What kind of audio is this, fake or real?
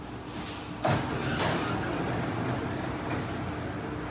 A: real